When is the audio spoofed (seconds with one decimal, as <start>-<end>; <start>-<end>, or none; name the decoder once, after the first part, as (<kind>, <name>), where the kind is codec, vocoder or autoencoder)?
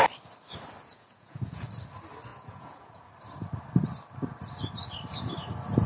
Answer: 0.9-1.7 (vocoder, Vocos); 2.3-3.0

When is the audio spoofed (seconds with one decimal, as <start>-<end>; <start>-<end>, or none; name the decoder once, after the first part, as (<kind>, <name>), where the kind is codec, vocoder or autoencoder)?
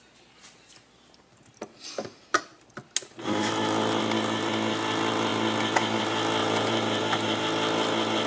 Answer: 6.4-7.4 (vocoder, BigVGAN v2)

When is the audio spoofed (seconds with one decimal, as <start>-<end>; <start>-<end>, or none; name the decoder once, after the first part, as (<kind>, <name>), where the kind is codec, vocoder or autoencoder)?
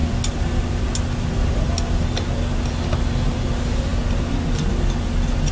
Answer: none